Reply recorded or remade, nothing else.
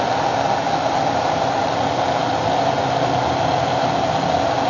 recorded